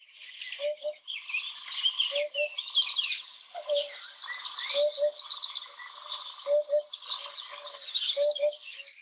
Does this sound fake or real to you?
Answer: real